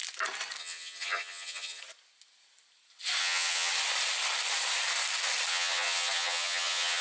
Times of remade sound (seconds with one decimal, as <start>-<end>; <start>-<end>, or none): 0.6-1.8; 3.2-3.7; 5.5-7.0